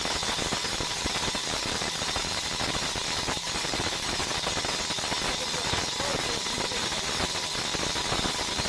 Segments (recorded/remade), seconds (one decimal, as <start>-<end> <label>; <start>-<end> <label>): 0.0-0.6 recorded; 0.6-4.5 remade; 4.5-6.1 recorded; 6.1-7.1 remade; 7.1-8.7 recorded